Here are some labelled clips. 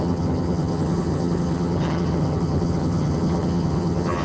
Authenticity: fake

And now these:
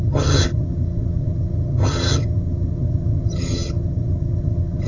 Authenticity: fake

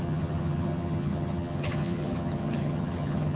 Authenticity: fake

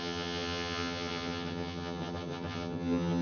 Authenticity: fake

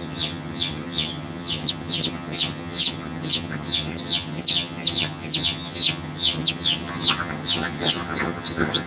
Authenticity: fake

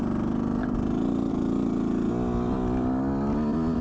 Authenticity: real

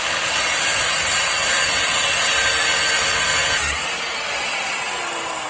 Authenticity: real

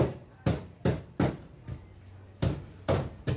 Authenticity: real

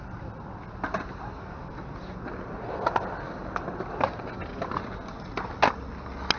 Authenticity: real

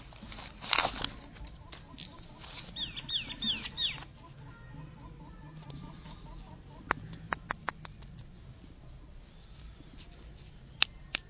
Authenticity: real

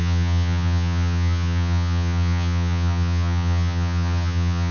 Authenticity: fake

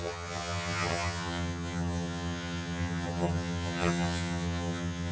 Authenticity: fake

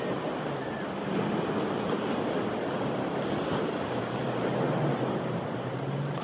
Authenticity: real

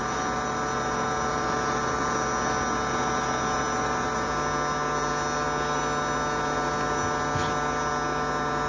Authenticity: real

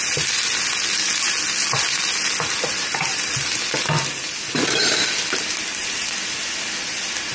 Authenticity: real